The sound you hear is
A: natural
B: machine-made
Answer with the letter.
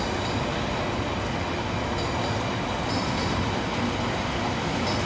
A